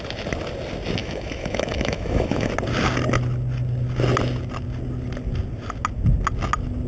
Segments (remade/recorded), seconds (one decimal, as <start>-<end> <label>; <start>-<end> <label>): 0.0-1.0 recorded; 1.0-2.5 remade; 2.5-6.9 recorded